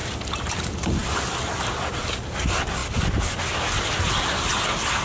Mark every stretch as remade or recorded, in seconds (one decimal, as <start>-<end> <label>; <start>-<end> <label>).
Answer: 0.0-5.0 recorded